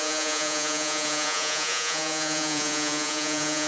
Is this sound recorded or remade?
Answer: remade